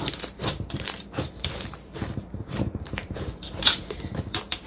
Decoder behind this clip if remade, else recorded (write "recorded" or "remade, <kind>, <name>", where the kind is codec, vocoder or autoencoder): remade, vocoder, BigVGAN v2